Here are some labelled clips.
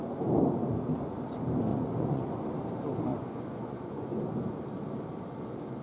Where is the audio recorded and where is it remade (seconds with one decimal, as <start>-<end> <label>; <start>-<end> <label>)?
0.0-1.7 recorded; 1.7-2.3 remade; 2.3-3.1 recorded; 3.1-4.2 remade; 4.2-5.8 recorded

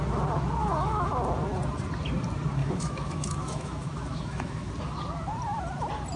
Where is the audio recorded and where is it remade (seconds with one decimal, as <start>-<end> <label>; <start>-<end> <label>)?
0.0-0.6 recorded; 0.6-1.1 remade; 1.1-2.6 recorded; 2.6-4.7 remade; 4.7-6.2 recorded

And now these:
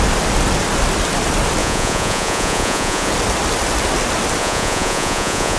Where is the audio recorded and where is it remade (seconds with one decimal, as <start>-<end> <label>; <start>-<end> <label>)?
0.0-1.6 recorded; 1.6-3.1 remade; 3.1-4.4 recorded; 4.4-5.6 remade